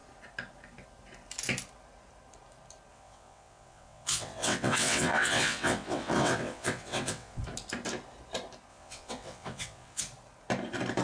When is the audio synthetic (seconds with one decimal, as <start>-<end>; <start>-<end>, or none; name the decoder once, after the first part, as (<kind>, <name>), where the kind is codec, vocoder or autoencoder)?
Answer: 2.9-7.4 (vocoder, WaveNeXt); 8.7-10.0